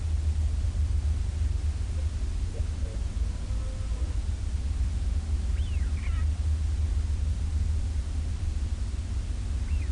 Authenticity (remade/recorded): recorded